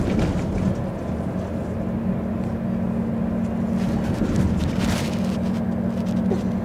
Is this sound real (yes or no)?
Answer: yes